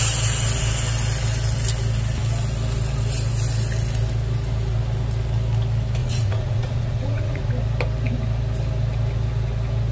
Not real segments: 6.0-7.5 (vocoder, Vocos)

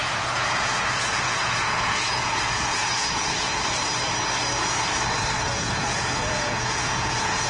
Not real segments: 0.0-3.5 (vocoder, Vocos); 5.4-7.5

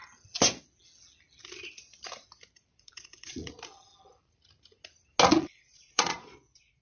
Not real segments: 2.7-3.5 (vocoder, Vocos); 5.3-6.8

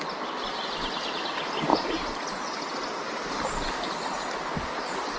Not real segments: none

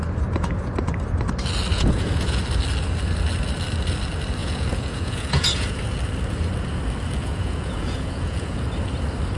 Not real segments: 1.7-2.4 (vocoder, Vocos); 4.4-5.8; 7.2-8.6

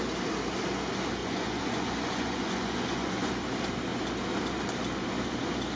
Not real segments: 1.2-3.3 (vocoder, Vocos)